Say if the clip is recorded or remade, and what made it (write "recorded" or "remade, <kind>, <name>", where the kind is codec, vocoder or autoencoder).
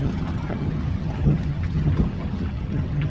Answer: remade, vocoder, HiFi-GAN